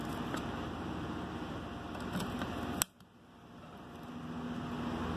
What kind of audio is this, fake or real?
real